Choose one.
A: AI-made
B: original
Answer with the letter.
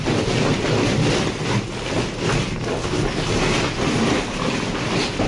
B